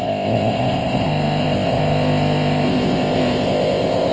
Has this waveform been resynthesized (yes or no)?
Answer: yes